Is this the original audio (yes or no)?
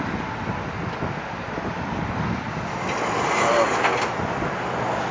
yes